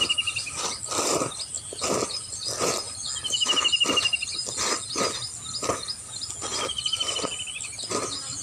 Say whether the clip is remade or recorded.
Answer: recorded